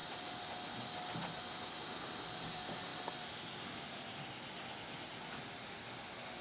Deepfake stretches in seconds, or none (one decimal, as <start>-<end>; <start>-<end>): none